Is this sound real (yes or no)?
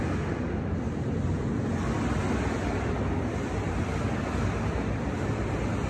yes